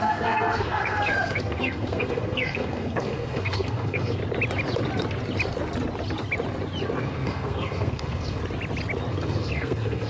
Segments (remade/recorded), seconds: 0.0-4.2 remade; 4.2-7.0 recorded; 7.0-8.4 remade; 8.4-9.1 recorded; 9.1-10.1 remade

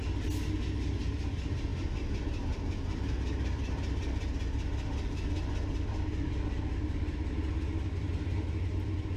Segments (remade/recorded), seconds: 0.0-9.2 recorded

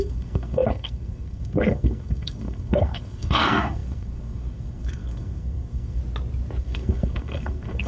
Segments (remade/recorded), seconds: 0.0-6.0 remade; 6.0-6.6 recorded; 6.6-7.9 remade